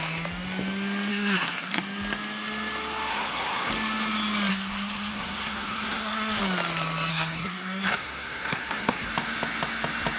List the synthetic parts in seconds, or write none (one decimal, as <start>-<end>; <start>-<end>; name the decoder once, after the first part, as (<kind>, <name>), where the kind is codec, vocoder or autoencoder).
1.1-1.8 (codec, SNAC); 3.1-3.7; 4.5-6.4; 7.1-9.1